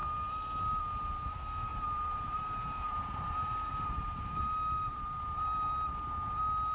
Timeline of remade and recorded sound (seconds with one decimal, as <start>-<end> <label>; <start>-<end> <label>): 0.0-1.7 recorded; 1.7-5.7 remade; 5.7-6.7 recorded

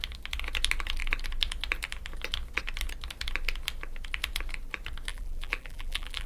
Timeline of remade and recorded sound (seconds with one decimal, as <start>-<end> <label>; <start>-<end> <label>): 0.0-5.1 recorded; 5.1-6.3 remade